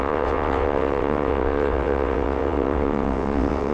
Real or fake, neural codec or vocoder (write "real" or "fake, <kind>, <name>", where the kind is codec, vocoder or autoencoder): fake, vocoder, WaveNeXt